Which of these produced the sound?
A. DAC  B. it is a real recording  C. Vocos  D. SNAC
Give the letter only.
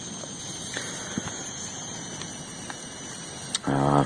B